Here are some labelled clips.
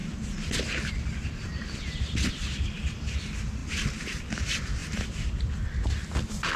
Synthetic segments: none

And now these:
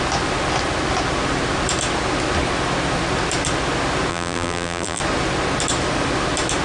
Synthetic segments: 4.1-5.0 (vocoder, BigVGAN v2)

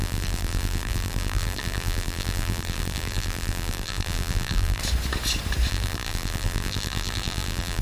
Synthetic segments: 0.0-4.8 (vocoder, BigVGAN v2); 5.7-7.8

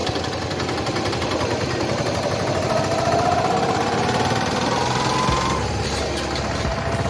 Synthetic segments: 0.0-1.1 (vocoder, BigVGAN v2)

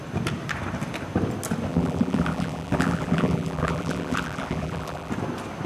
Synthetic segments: 1.7-5.1 (vocoder, BigVGAN v2)

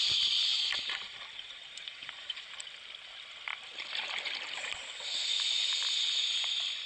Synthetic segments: 0.0-0.5 (vocoder, BigVGAN v2); 1.8-6.9